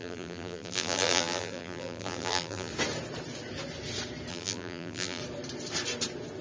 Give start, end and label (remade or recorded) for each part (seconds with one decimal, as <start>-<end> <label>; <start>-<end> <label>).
0.0-2.7 remade; 2.7-4.3 recorded; 4.3-5.2 remade; 5.2-6.4 recorded